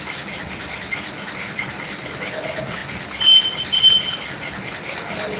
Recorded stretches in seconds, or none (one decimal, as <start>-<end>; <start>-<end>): 0.0-5.4